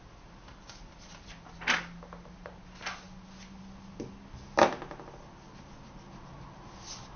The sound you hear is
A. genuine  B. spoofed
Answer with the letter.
A